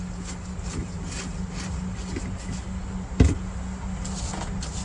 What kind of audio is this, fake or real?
real